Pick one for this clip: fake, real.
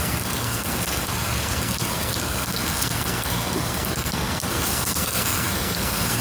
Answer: fake